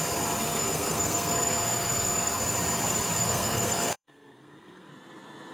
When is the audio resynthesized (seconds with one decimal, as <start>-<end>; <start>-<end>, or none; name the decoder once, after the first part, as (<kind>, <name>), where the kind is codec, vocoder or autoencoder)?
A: 0.5-2.4 (codec, SNAC); 3.2-4.9